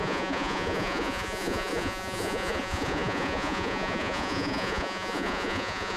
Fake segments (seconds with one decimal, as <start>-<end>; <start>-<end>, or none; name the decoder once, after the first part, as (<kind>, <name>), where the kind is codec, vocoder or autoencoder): 0.0-6.0 (vocoder, Vocos)